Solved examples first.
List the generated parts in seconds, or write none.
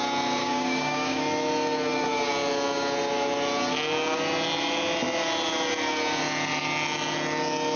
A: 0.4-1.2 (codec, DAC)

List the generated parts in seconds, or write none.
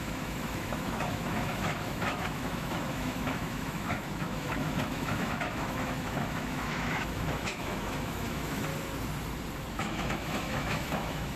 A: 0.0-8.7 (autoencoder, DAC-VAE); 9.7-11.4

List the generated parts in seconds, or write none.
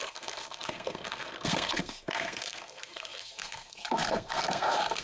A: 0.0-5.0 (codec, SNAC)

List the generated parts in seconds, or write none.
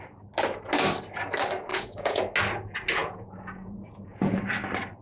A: 1.7-2.2 (vocoder, Vocos); 3.0-4.4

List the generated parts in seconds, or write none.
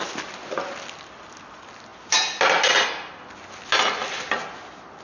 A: none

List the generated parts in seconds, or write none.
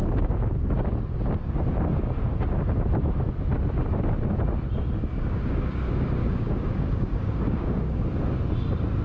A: 0.0-0.5 (codec, DAC); 5.1-8.1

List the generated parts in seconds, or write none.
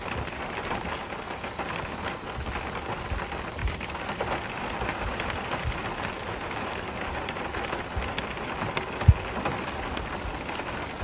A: 3.6-4.2 (vocoder, BigVGAN v2)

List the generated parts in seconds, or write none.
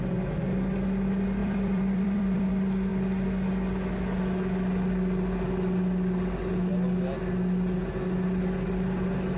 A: 1.4-2.5 (vocoder, BigVGAN v2)